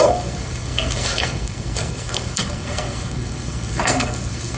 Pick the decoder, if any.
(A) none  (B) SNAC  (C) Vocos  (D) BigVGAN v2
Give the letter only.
B